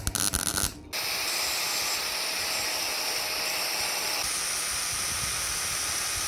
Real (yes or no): yes